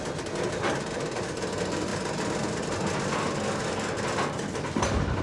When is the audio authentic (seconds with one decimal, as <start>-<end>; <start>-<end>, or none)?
0.0-5.2